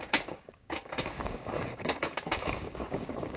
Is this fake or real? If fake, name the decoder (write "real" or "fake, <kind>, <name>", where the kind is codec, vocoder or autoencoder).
fake, codec, DAC